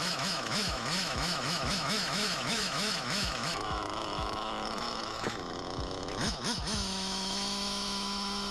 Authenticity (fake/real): fake